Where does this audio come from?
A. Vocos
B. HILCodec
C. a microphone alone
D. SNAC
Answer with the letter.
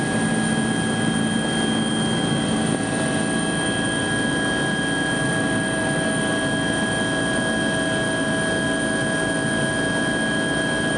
C